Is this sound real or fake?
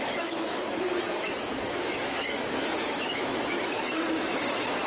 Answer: fake